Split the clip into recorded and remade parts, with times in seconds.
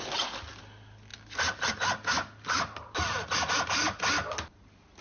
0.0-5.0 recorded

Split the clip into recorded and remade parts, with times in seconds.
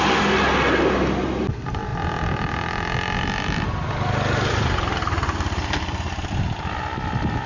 0.0-7.5 recorded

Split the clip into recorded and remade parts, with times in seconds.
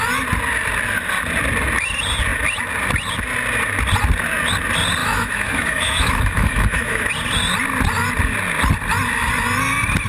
0.0-5.0 recorded; 5.0-7.1 remade; 7.1-10.1 recorded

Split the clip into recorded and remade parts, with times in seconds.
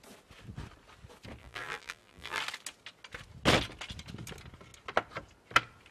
0.0-1.4 recorded; 1.4-2.4 remade; 2.4-5.9 recorded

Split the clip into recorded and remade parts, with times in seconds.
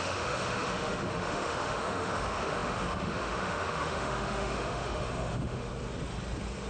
0.0-5.7 remade; 5.7-6.7 recorded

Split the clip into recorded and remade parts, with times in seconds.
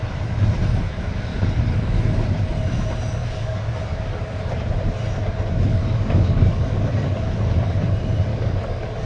0.0-1.3 recorded; 1.3-2.0 remade; 2.0-3.2 recorded; 3.2-4.4 remade; 4.4-5.7 recorded; 5.7-7.9 remade; 7.9-8.3 recorded; 8.3-9.1 remade